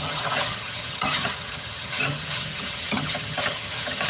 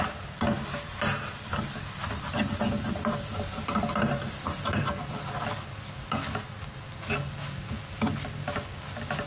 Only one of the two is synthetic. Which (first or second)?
first